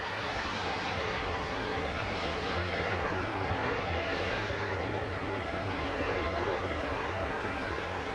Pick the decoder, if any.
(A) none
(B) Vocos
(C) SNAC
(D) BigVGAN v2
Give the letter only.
C